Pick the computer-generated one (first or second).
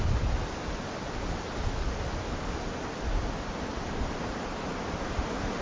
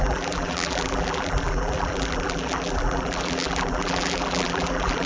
second